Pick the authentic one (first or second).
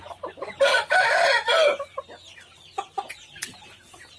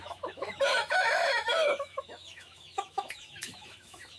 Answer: first